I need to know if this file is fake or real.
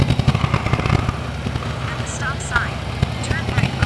real